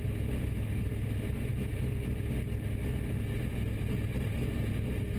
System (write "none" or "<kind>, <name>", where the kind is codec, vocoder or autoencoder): none